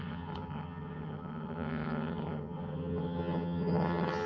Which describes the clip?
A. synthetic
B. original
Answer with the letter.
A